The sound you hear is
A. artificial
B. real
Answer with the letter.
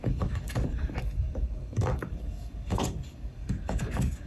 A